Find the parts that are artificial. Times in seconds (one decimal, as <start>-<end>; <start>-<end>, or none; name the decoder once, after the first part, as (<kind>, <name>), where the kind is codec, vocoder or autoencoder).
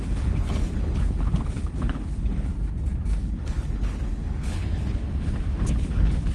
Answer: 0.0-2.5 (codec, HILCodec); 3.2-6.3